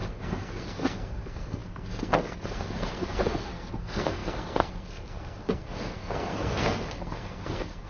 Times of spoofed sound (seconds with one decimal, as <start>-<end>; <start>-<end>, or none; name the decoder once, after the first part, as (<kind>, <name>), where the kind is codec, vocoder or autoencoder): 0.0-7.9 (codec, SNAC)